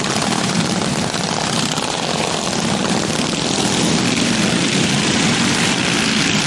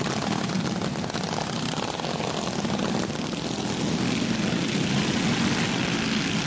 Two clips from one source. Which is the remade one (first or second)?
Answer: first